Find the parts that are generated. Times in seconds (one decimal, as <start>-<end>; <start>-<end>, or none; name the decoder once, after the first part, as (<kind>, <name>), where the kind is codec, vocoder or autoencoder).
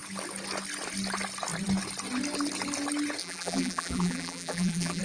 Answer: 3.2-5.0 (vocoder, BigVGAN v2)